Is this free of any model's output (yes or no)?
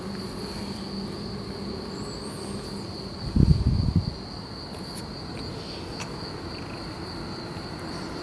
yes